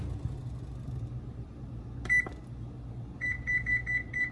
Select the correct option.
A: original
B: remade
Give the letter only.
A